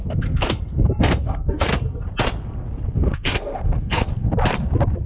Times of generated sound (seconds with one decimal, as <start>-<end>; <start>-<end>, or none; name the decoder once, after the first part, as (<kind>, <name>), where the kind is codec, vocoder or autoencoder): 0.0-1.7 (codec, SNAC); 2.9-4.1